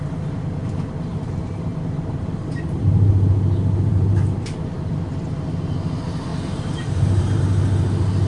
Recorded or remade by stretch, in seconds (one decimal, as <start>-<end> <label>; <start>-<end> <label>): 0.0-1.1 recorded; 1.1-3.1 remade; 3.1-3.9 recorded; 3.9-4.6 remade; 4.6-6.3 recorded; 6.3-7.4 remade; 7.4-8.3 recorded

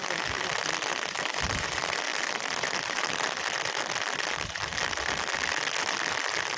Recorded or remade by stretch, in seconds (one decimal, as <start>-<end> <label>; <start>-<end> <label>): 0.0-6.6 recorded

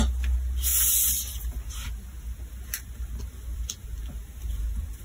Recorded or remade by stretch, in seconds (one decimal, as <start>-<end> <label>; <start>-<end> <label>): 0.0-5.0 recorded

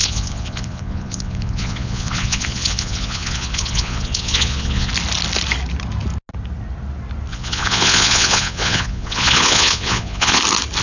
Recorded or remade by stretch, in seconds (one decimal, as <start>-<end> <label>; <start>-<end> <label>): 0.0-4.9 remade; 4.9-7.3 recorded; 7.3-10.4 remade; 10.4-10.8 recorded

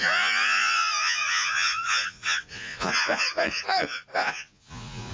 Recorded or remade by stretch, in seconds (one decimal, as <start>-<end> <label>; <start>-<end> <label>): 0.0-5.1 remade